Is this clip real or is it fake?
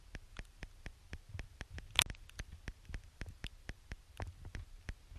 real